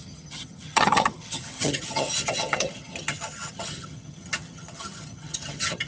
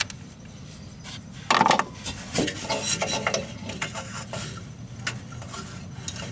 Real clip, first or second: second